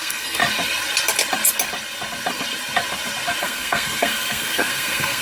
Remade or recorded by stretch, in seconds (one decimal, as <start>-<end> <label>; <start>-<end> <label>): 0.0-0.4 remade; 0.4-3.4 recorded; 3.4-5.2 remade